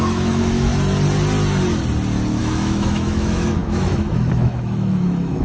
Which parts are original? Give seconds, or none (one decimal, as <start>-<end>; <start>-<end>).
0.7-2.4